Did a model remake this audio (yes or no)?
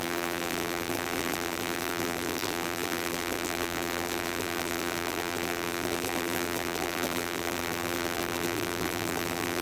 yes